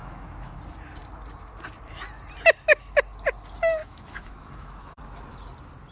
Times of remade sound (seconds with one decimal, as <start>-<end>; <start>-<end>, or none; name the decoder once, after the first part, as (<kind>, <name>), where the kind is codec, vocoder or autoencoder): 0.0-0.6 (autoencoder, DAC-VAE); 3.8-5.0